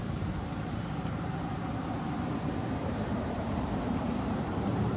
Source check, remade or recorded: remade